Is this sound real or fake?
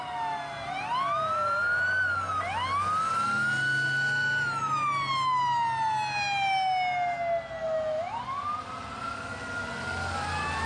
real